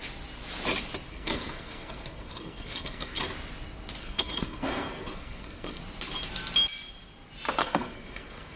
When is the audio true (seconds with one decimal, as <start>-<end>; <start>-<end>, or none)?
0.0-1.1; 3.2-4.0; 5.8-7.6